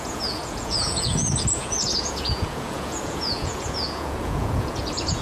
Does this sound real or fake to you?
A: fake